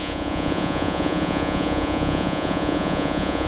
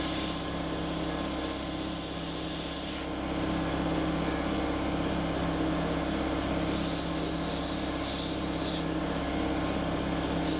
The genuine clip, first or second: second